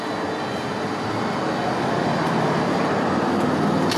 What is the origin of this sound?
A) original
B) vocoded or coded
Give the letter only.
A